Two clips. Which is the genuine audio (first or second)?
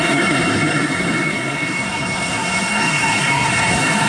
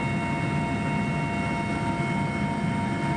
second